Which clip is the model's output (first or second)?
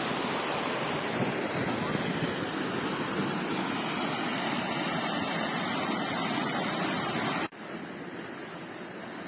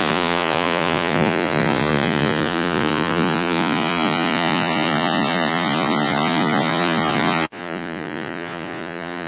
second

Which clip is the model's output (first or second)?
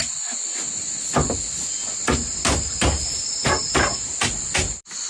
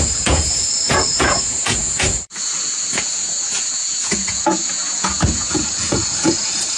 second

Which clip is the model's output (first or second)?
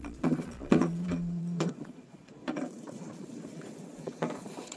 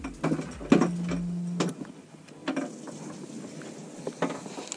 first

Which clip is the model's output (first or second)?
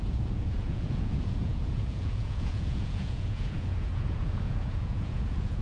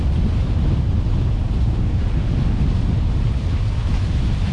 first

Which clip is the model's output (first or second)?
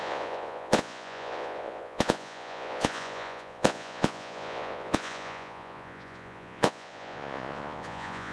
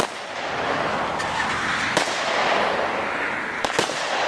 first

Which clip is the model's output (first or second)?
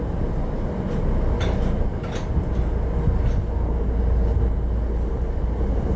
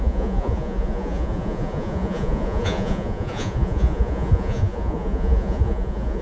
second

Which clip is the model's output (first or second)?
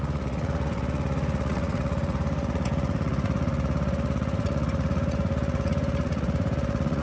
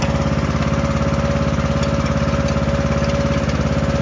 first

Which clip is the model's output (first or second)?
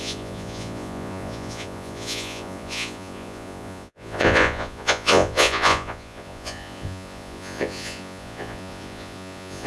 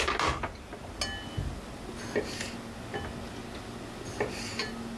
first